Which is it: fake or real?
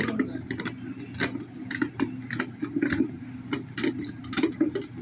real